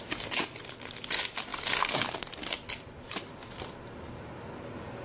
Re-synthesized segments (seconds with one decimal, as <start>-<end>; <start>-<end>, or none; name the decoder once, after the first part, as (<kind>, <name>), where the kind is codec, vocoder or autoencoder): none